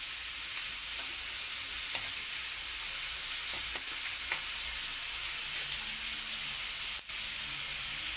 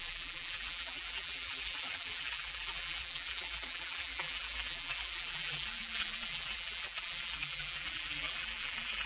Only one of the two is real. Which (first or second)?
first